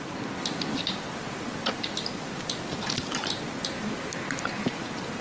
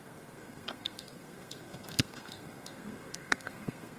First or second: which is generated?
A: second